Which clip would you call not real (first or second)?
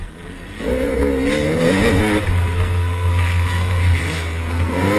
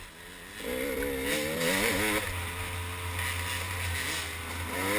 first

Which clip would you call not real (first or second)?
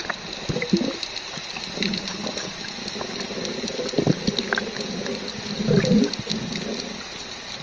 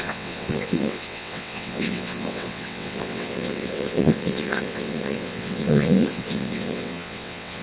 second